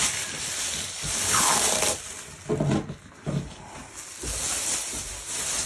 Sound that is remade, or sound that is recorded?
recorded